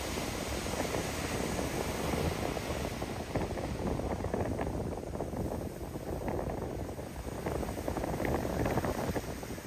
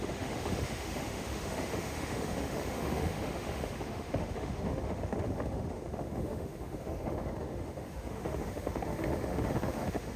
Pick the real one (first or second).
first